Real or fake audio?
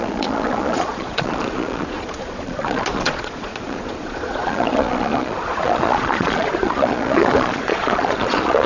fake